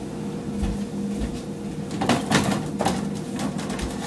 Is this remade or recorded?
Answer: recorded